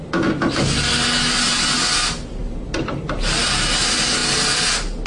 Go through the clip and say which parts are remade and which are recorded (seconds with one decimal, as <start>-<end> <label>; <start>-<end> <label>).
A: 0.0-2.4 recorded; 2.4-3.4 remade; 3.4-5.1 recorded